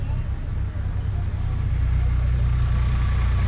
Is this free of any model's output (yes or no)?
yes